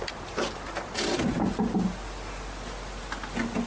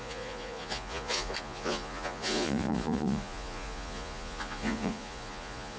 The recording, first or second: first